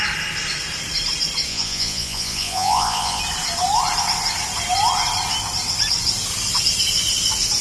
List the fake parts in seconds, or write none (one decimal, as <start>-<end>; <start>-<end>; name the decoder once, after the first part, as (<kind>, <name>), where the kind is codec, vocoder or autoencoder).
1.5-3.2 (vocoder, Vocos)